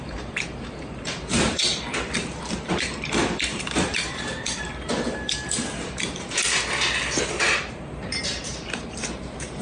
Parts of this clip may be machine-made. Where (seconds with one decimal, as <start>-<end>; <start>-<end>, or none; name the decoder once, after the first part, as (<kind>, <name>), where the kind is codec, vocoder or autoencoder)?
0.0-1.7 (vocoder, BigVGAN v2); 2.7-6.4; 7.7-9.6

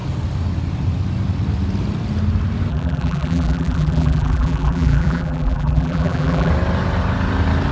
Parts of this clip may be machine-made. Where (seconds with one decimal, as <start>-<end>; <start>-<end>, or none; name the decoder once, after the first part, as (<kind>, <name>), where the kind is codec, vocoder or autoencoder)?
2.7-6.5 (vocoder, BigVGAN v2)